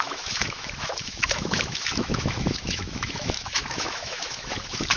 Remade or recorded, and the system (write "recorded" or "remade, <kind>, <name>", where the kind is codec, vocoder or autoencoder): remade, autoencoder, DAC-VAE